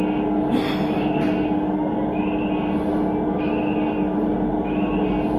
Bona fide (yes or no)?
yes